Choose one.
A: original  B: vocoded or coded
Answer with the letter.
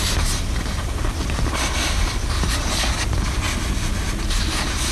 A